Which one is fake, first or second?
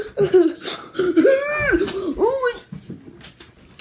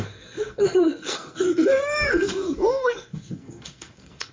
second